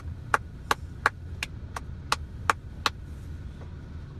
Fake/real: real